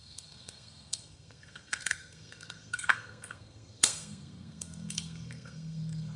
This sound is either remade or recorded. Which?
remade